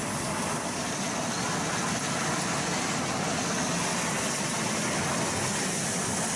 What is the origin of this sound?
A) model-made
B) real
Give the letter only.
B